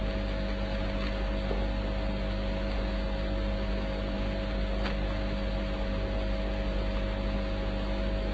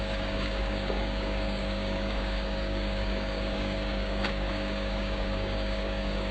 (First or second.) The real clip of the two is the first